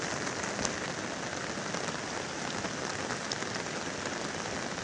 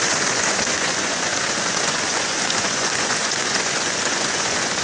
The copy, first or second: second